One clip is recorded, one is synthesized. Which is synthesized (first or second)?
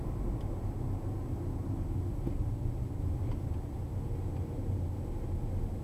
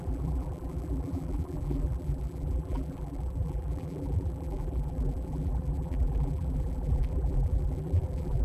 second